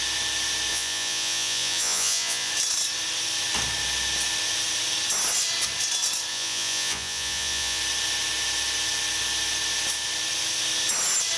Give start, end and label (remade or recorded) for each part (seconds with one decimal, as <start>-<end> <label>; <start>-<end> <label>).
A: 0.0-0.7 recorded; 0.7-2.5 remade; 2.5-6.3 recorded; 6.3-7.8 remade; 7.8-11.4 recorded